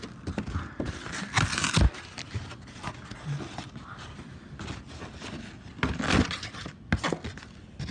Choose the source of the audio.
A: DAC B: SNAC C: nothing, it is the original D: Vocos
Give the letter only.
C